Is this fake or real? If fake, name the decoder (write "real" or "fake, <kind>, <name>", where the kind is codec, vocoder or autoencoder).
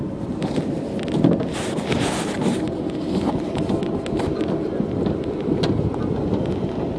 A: real